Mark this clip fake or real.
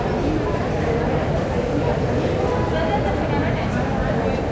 real